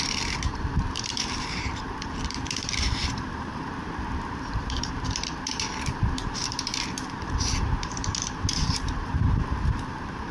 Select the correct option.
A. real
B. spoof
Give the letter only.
B